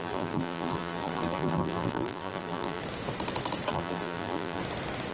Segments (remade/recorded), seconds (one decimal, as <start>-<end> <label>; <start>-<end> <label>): 0.0-2.8 remade; 2.8-3.7 recorded; 3.7-4.6 remade; 4.6-5.1 recorded